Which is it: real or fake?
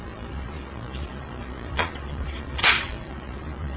fake